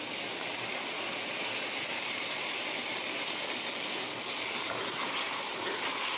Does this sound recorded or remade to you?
recorded